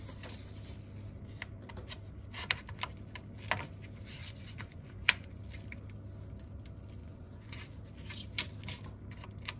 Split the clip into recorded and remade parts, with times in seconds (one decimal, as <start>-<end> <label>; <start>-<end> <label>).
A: 0.0-4.2 recorded; 4.2-5.4 remade; 5.4-7.0 recorded; 7.0-7.6 remade; 7.6-9.6 recorded